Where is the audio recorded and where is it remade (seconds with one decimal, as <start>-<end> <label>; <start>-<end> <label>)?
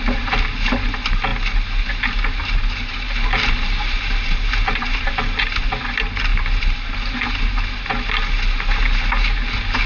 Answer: 0.0-3.2 recorded; 3.2-5.5 remade; 5.5-6.3 recorded; 6.3-6.9 remade; 6.9-9.9 recorded